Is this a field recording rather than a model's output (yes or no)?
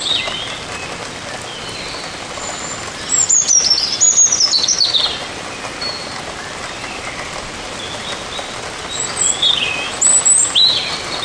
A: yes